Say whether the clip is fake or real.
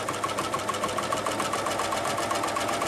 real